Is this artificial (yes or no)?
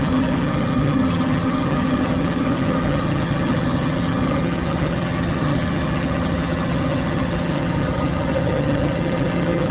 yes